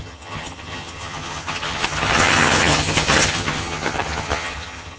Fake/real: fake